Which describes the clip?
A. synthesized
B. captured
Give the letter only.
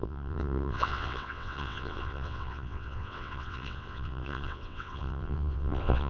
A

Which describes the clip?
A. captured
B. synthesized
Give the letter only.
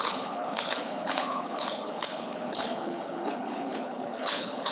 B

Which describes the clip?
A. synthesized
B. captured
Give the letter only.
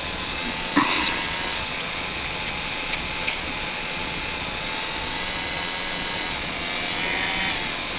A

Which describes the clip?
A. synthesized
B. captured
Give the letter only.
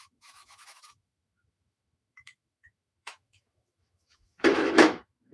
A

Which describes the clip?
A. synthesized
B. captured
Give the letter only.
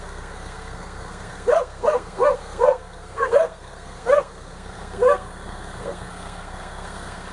A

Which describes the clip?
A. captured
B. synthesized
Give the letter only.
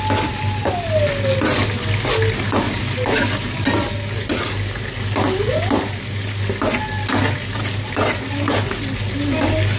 A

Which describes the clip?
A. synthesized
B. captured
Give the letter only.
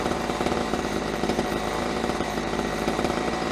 A